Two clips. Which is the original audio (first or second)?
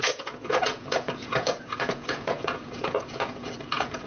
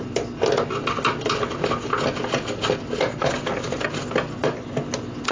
second